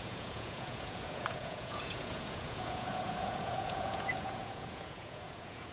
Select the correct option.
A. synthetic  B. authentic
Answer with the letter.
A